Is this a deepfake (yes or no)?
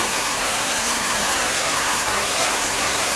yes